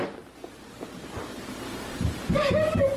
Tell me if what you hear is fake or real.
real